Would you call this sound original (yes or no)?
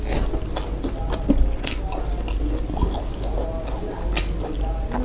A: yes